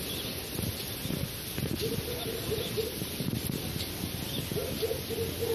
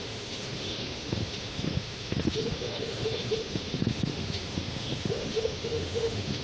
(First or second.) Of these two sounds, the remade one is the second